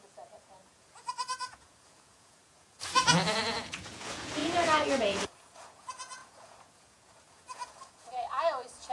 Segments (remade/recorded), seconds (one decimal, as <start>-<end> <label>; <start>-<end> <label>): 0.0-8.9 remade